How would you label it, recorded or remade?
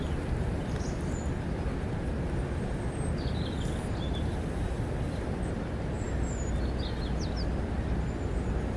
recorded